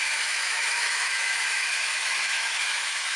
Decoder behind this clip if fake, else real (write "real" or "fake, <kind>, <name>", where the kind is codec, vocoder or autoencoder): fake, autoencoder, DAC-VAE